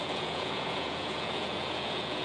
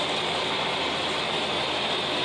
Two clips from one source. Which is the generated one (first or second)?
first